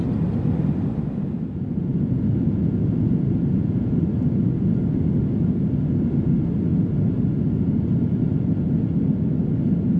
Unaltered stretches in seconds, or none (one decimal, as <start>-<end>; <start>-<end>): 0.0-1.9; 4.0-10.0